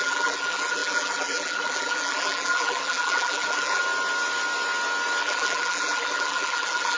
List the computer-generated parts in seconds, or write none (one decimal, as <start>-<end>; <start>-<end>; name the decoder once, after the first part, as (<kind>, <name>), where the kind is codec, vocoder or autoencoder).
0.0-3.8 (vocoder, BigVGAN v2); 5.2-7.0